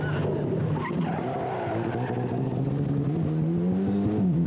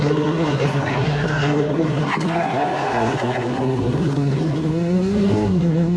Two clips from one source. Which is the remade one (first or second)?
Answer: second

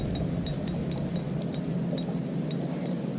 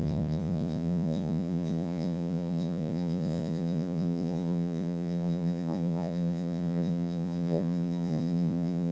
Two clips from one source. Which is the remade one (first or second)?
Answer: second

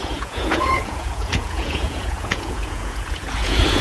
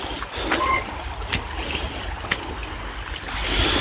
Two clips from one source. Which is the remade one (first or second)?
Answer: first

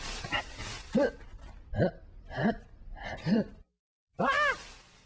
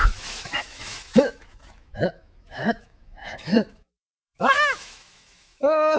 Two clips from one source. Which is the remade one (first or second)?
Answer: second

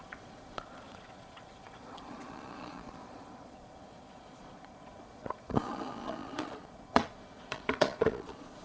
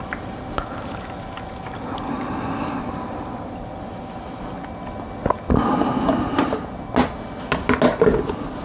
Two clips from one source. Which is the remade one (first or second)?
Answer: first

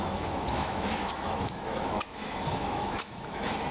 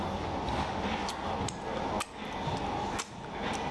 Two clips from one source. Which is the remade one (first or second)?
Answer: first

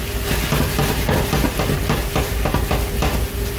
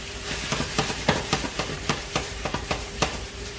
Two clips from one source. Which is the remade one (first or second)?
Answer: second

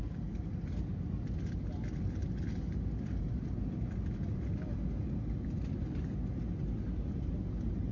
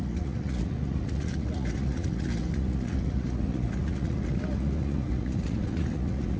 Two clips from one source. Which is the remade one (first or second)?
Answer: second